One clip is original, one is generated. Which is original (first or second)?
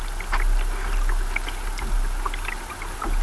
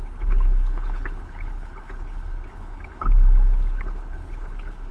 first